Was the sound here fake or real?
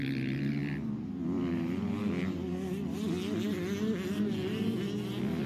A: real